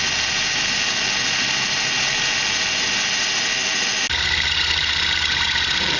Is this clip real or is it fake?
real